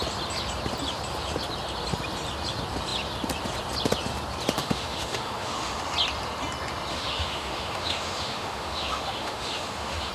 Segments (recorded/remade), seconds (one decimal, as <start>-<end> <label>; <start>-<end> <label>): 0.0-4.6 recorded; 4.6-5.8 remade; 5.8-6.9 recorded; 6.9-10.1 remade